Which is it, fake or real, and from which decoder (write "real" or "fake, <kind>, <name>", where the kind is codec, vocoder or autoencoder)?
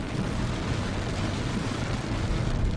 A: real